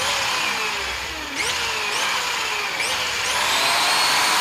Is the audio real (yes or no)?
yes